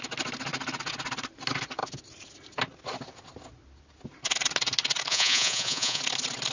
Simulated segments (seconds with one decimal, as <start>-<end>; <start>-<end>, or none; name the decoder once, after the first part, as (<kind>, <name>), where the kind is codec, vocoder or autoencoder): 5.1-6.0 (vocoder, Vocos)